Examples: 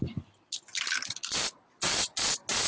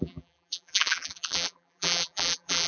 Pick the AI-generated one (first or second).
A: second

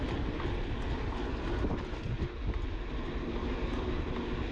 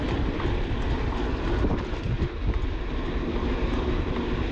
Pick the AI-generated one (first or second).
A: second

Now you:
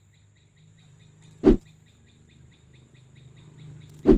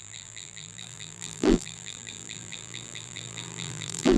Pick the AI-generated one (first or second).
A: second